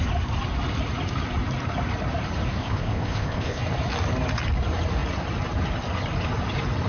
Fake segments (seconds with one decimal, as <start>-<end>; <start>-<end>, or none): 2.6-3.6